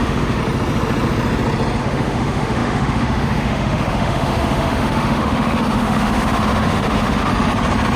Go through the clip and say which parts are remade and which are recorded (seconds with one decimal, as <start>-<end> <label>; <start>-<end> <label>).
0.0-0.4 remade; 0.4-1.8 recorded; 1.8-7.3 remade; 7.3-8.0 recorded